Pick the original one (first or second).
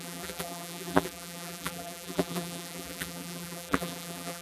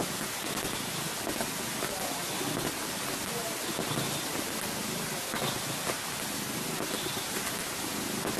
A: second